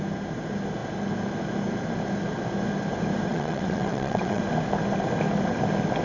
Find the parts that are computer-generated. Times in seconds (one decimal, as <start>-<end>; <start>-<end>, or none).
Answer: 3.3-4.4